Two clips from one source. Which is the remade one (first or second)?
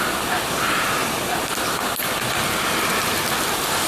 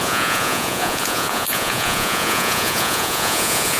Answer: second